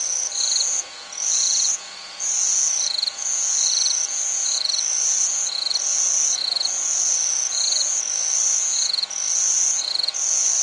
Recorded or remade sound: remade